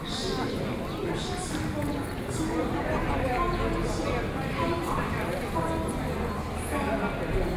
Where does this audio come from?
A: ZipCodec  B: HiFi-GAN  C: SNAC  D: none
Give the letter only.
D